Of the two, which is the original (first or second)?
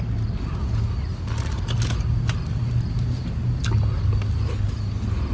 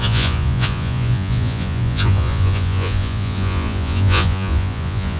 first